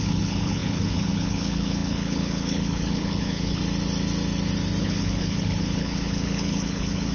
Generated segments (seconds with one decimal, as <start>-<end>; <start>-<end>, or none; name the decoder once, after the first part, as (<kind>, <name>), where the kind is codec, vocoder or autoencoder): 0.0-3.6 (codec, HILCodec); 4.8-7.1